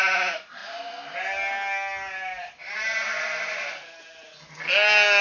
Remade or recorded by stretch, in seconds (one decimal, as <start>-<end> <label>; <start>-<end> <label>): 0.0-5.2 recorded